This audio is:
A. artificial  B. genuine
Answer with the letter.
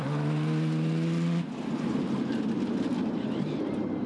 B